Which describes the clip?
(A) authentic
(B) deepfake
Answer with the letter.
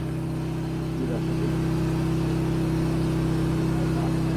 A